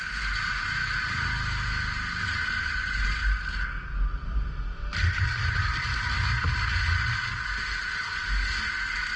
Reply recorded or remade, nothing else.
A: recorded